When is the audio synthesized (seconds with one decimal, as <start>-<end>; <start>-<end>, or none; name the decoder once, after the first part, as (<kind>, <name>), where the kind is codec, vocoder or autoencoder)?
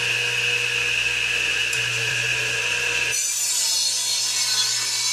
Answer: 1.6-3.7 (vocoder, BigVGAN v2)